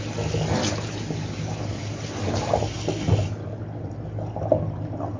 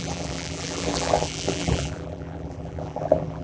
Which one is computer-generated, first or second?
second